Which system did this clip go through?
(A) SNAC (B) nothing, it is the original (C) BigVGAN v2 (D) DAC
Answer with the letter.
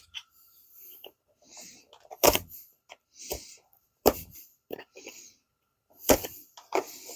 C